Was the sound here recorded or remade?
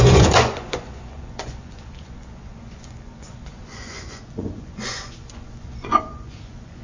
remade